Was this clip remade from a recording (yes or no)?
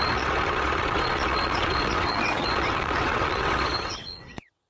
yes